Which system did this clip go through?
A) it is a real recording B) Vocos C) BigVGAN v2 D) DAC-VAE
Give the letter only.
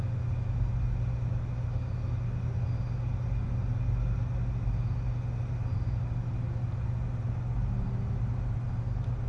A